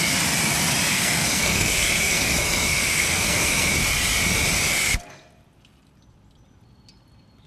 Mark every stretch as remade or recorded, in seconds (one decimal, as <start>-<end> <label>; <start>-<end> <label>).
0.0-0.9 recorded; 0.9-3.7 remade; 3.7-7.5 recorded

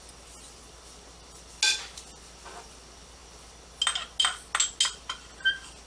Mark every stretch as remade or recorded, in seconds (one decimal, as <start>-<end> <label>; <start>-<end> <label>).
0.0-5.9 recorded

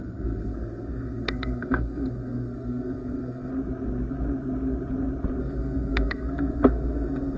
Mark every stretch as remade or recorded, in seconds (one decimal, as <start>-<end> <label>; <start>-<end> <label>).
0.0-3.5 remade; 3.5-5.4 recorded; 5.4-7.4 remade

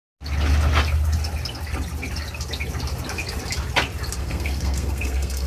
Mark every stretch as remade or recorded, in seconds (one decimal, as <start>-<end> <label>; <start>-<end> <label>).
0.0-4.2 recorded; 4.2-5.5 remade

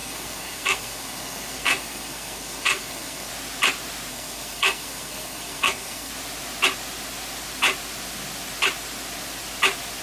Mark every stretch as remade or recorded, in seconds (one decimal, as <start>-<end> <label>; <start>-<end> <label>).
0.0-3.3 remade; 3.3-4.1 recorded; 4.1-6.1 remade; 6.1-10.0 recorded

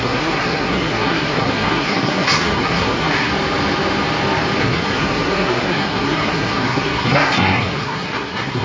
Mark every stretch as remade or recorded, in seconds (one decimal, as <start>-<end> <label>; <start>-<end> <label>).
0.0-3.3 remade; 3.3-4.6 recorded; 4.6-8.6 remade